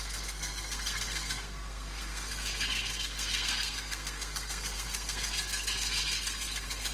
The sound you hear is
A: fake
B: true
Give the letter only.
A